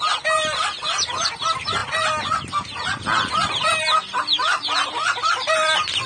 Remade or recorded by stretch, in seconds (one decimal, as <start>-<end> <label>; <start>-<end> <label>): 0.0-6.1 recorded